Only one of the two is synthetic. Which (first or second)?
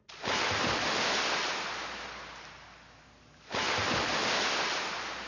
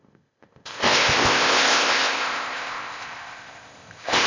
second